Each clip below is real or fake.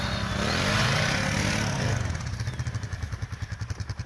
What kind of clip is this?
real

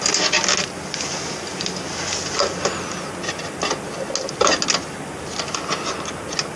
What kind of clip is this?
real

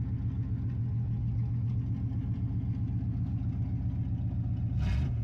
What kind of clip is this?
real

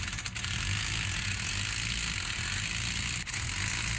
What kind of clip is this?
real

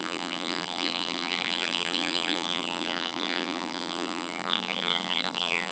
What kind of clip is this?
fake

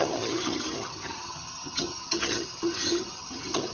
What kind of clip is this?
fake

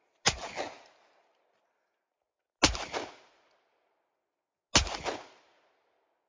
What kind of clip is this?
real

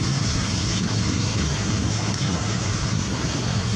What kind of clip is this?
fake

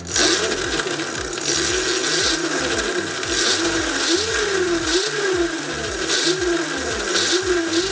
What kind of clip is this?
real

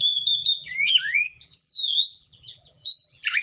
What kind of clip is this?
fake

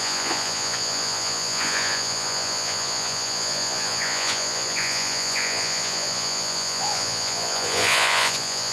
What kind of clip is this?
fake